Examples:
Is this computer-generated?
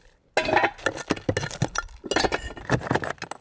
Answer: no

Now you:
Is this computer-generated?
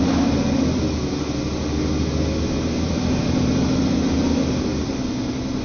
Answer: no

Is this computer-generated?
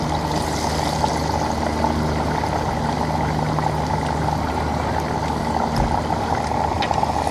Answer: no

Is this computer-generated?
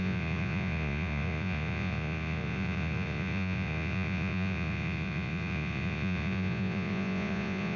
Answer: yes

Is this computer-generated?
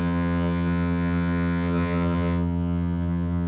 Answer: yes